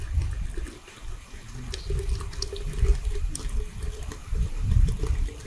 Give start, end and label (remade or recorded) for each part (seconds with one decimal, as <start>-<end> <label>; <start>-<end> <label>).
0.0-2.9 recorded; 2.9-3.4 remade; 3.4-4.2 recorded; 4.2-4.9 remade; 4.9-5.5 recorded